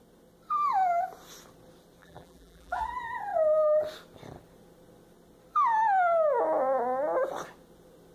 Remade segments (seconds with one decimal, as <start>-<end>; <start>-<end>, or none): 2.0-2.8